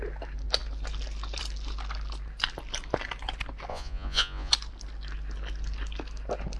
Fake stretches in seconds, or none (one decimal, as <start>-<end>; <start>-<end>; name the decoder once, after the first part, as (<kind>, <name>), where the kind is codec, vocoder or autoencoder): 3.7-4.5 (vocoder, Vocos)

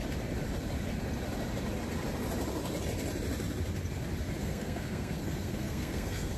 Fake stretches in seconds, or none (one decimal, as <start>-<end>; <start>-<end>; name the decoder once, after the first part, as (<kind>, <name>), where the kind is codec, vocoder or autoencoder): 4.4-6.4 (codec, SNAC)

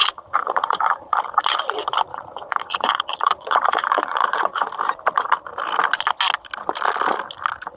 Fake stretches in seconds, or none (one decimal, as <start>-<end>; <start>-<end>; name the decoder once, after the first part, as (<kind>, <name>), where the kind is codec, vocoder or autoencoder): 0.0-4.6 (vocoder, Vocos)

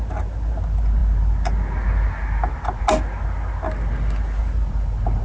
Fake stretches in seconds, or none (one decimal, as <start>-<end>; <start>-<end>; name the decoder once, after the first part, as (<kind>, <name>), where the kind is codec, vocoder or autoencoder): 4.4-5.2 (vocoder, BigVGAN v2)